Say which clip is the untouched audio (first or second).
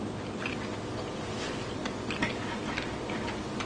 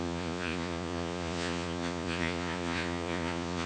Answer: first